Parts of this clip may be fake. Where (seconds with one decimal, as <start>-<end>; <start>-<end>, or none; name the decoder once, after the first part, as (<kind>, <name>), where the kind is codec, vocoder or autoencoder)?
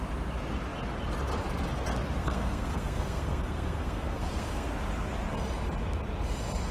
2.2-4.7 (codec, SNAC)